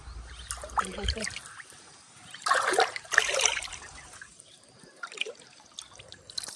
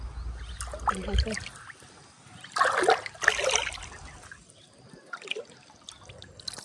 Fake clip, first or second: first